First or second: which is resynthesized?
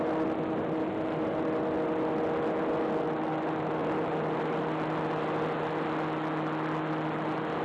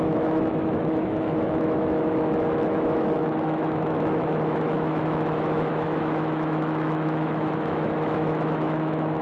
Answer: second